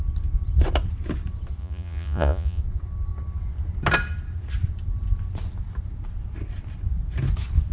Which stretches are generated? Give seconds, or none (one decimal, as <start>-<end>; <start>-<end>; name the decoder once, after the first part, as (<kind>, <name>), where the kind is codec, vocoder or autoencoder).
1.6-2.6 (vocoder, Vocos)